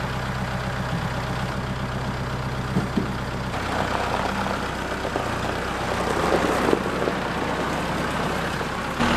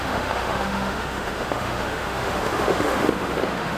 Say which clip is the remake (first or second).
second